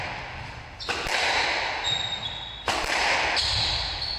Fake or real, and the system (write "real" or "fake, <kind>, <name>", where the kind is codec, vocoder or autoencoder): real